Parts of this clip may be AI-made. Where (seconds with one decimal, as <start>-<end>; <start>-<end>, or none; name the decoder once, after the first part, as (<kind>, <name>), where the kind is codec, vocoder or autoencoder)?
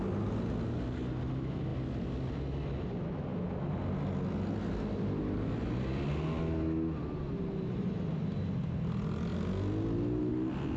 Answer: none